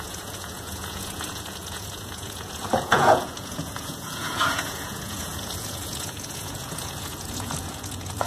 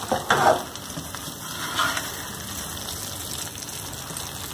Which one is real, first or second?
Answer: second